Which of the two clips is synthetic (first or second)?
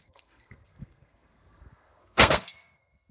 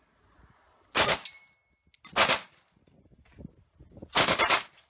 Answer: first